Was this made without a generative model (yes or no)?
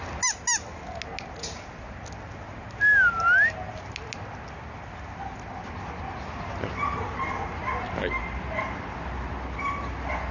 yes